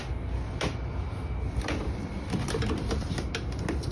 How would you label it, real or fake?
real